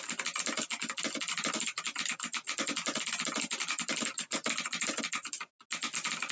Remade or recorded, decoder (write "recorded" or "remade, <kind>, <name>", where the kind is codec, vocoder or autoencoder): recorded